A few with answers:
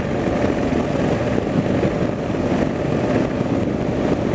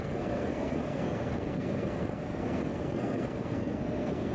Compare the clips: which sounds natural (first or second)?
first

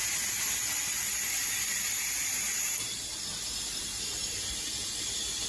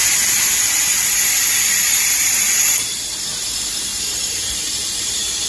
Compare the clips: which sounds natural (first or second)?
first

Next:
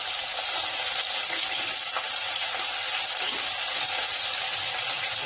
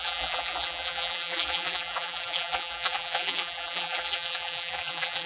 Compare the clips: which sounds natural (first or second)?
first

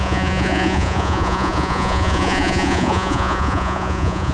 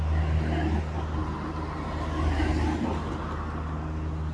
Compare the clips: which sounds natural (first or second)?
second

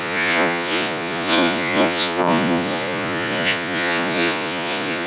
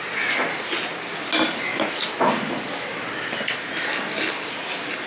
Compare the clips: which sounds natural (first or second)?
second